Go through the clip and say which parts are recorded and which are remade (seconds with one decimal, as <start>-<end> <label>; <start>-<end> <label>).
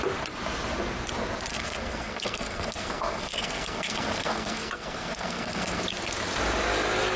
0.0-1.5 recorded; 1.5-5.8 remade; 5.8-7.2 recorded